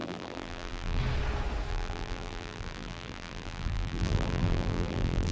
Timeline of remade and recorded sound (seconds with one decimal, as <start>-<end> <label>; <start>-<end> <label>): 0.0-1.0 remade; 1.0-1.7 recorded; 1.7-5.3 remade